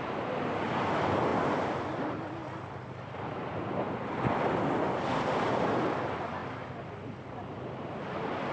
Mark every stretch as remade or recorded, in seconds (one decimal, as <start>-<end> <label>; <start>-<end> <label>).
0.0-8.5 recorded